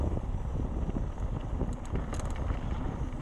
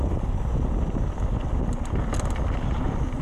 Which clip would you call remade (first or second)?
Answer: first